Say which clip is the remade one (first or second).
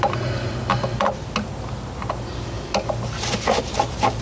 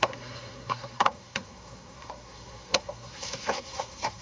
second